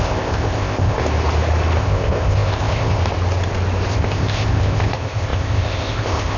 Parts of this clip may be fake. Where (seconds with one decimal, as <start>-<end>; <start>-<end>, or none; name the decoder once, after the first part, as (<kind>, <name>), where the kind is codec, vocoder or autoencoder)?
0.0-1.0 (codec, ZipCodec); 1.8-3.0; 3.9-6.4